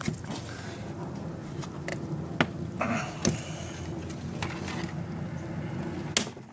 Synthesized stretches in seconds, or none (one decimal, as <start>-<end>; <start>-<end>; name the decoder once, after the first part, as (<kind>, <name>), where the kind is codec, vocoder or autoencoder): none